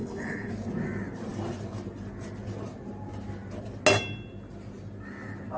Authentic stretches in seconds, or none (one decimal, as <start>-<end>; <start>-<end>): 0.5-5.6

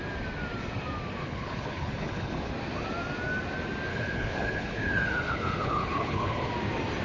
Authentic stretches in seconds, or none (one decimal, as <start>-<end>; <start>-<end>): 0.0-1.2; 2.5-3.9; 6.5-7.0

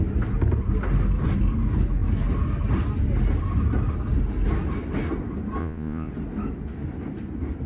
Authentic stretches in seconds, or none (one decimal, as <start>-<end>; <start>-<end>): 0.0-5.6; 6.1-7.7

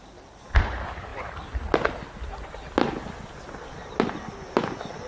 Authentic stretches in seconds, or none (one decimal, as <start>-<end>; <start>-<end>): 0.0-5.1